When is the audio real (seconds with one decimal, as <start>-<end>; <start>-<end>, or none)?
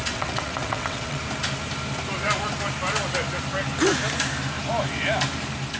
1.2-5.8